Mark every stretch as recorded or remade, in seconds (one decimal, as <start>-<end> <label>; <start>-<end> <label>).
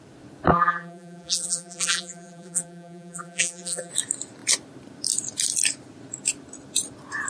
0.0-0.5 recorded; 0.5-3.9 remade; 3.9-7.3 recorded